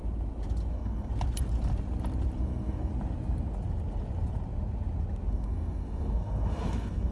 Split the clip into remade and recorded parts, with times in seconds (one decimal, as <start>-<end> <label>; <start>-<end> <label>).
0.0-0.7 recorded; 0.7-1.1 remade; 1.1-2.4 recorded; 2.4-2.9 remade; 2.9-5.3 recorded; 5.3-7.1 remade